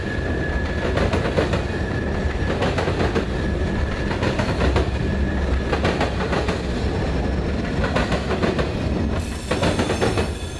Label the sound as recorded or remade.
recorded